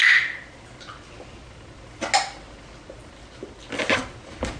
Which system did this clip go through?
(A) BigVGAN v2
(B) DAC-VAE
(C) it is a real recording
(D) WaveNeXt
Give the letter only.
C